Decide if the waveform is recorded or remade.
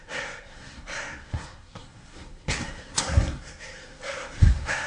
remade